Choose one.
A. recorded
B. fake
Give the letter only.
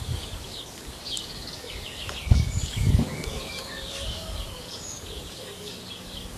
B